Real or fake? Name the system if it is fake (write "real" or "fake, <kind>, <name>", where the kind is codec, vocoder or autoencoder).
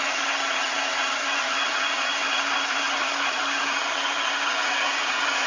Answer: fake, vocoder, HiFi-GAN